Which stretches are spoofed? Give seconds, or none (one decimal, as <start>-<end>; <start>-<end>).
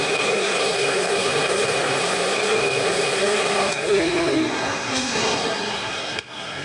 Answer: 0.0-6.6